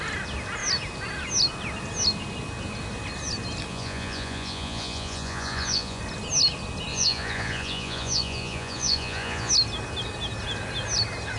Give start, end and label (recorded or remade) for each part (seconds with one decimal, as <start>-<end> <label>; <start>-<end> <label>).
0.0-3.7 recorded; 3.7-6.0 remade; 6.0-6.9 recorded; 6.9-9.5 remade; 9.5-11.4 recorded